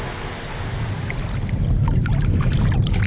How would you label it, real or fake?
real